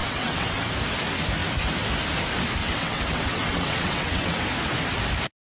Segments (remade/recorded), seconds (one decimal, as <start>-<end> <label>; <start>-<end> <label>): 0.0-0.7 remade; 0.7-2.6 recorded; 2.6-4.4 remade; 4.4-5.6 recorded